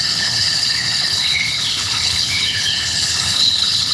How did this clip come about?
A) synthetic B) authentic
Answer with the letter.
A